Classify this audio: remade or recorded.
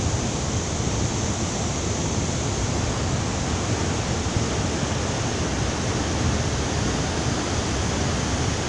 recorded